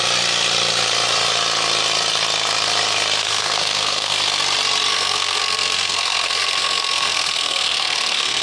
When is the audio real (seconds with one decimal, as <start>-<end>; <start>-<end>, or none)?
0.0-3.2; 4.4-4.9